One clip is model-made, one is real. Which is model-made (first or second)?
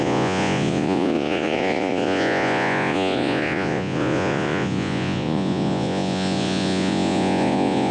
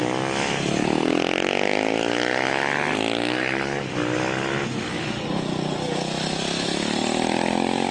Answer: first